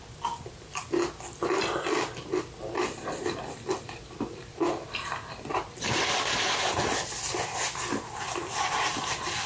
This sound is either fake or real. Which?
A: real